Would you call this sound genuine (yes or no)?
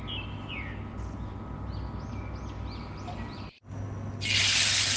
yes